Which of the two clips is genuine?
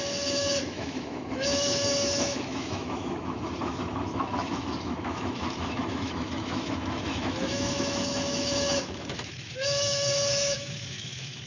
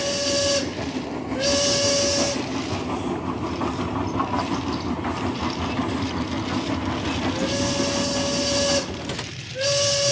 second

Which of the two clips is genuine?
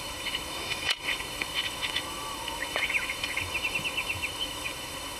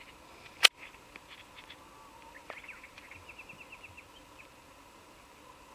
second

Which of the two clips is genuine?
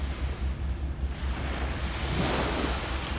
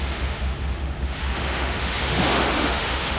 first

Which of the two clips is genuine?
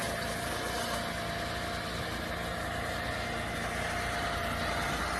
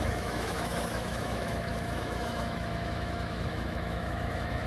first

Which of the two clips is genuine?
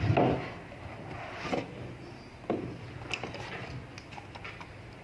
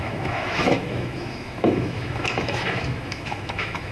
first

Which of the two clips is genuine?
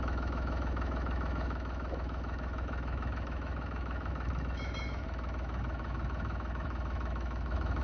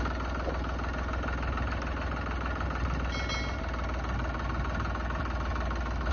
second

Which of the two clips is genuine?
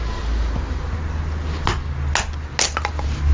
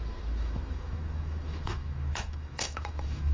first